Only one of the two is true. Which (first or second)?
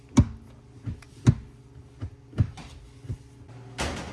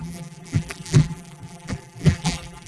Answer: first